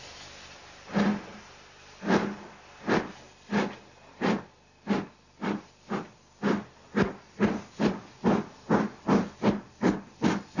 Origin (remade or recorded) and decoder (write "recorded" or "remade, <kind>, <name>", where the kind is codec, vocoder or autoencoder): recorded